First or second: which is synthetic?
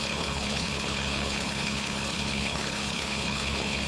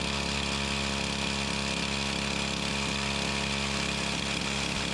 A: first